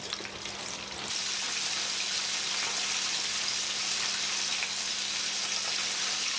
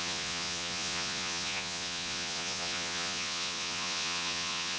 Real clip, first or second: first